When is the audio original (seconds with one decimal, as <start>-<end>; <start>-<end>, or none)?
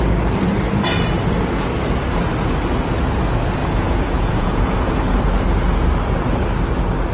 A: 0.0-3.6; 5.0-7.1